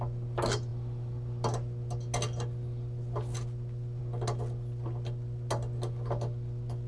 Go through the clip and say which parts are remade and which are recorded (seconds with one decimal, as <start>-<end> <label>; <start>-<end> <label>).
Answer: 0.0-6.9 recorded